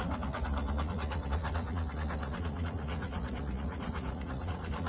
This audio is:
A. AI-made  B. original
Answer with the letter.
A